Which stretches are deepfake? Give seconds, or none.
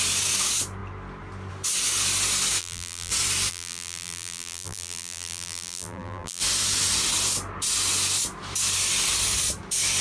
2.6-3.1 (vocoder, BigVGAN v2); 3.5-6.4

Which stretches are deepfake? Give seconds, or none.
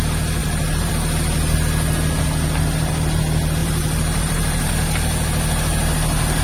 0.4-0.9 (vocoder, BigVGAN v2); 3.6-4.7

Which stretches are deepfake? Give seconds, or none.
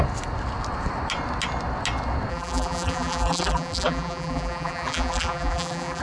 2.3-6.0 (vocoder, BigVGAN v2)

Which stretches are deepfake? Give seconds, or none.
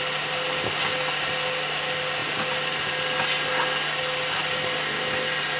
none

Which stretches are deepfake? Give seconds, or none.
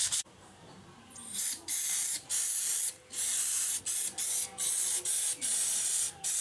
0.0-3.8 (vocoder, BigVGAN v2)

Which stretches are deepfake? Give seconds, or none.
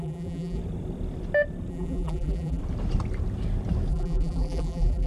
0.0-0.6 (vocoder, BigVGAN v2); 1.7-2.6; 3.9-5.1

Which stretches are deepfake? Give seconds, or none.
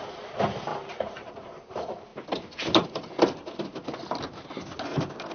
0.7-1.3 (vocoder, BigVGAN v2)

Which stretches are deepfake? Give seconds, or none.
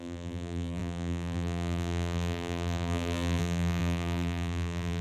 0.0-5.0 (vocoder, BigVGAN v2)